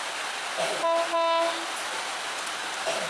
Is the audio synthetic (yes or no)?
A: no